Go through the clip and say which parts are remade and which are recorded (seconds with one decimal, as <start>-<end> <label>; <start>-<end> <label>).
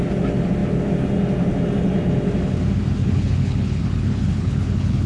0.0-3.0 recorded; 3.0-5.1 remade